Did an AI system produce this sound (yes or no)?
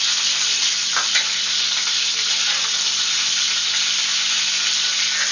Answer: no